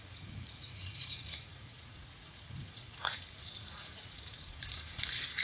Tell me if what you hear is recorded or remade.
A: remade